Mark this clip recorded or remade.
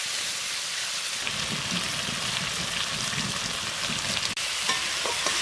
recorded